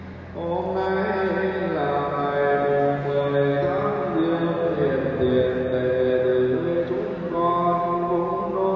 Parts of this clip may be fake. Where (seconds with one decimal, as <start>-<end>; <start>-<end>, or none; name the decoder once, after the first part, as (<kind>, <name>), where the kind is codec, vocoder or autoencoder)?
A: none